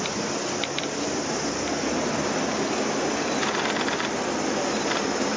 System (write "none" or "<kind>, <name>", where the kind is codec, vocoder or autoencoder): none